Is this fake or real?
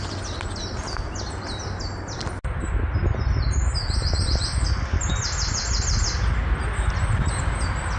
real